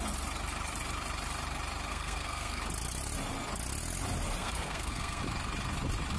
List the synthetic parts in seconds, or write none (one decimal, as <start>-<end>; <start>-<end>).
1.9-2.6; 4.4-5.2